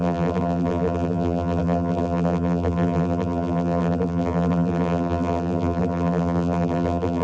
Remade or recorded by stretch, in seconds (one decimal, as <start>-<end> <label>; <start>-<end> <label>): 0.0-7.2 remade